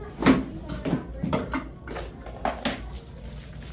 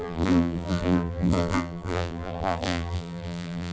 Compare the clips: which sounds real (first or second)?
first